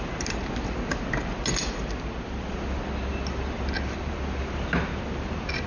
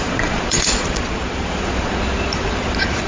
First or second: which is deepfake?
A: second